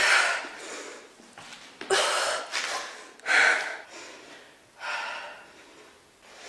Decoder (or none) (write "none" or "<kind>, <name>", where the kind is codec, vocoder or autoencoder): none